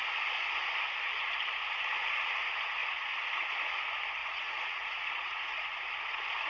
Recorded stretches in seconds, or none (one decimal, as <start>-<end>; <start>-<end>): 0.0-2.8; 3.8-4.2; 5.8-6.5